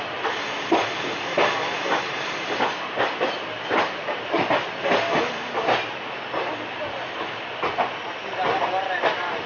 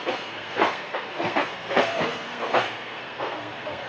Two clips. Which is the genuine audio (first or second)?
first